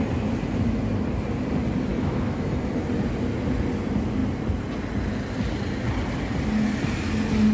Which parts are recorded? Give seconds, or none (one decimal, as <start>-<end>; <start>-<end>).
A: 0.0-1.9; 2.7-7.5